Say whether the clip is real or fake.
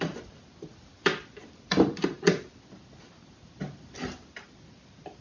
real